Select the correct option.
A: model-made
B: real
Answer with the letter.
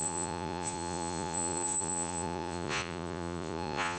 A